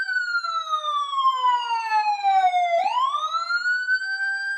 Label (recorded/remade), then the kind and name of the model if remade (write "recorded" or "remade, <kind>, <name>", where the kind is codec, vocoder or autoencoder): remade, vocoder, BigVGAN v2